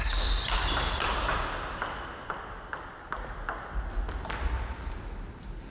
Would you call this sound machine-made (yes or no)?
no